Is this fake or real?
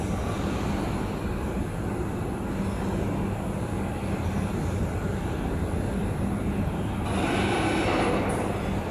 real